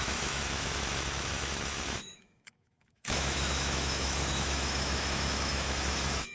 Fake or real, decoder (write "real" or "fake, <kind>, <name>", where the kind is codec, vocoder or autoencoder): fake, autoencoder, DAC-VAE